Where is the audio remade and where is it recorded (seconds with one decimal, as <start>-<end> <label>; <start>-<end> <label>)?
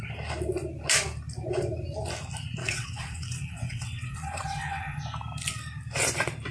0.0-2.6 recorded; 2.6-5.0 remade; 5.0-6.5 recorded